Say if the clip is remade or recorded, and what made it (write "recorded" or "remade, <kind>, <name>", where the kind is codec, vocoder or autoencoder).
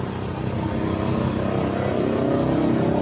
recorded